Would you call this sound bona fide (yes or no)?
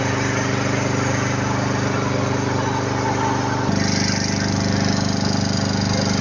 yes